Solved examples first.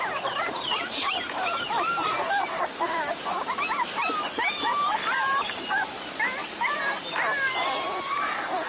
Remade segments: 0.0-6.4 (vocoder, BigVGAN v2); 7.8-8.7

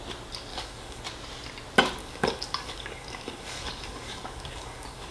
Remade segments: 0.5-1.0 (codec, DAC); 2.0-5.1